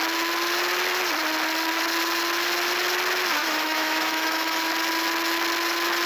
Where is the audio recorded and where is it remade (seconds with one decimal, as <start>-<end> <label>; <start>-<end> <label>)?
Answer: 0.0-3.4 recorded; 3.4-4.7 remade; 4.7-6.1 recorded